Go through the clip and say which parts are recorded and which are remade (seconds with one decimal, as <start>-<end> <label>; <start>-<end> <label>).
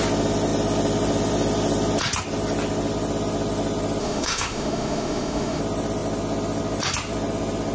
0.0-4.0 recorded; 4.0-5.6 remade; 5.6-7.7 recorded